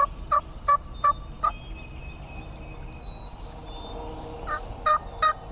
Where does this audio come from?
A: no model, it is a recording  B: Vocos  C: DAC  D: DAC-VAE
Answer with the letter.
A